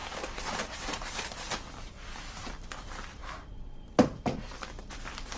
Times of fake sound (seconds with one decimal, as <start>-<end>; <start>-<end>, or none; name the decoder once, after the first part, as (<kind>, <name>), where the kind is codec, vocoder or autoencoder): 0.0-1.9 (vocoder, BigVGAN v2); 3.2-4.7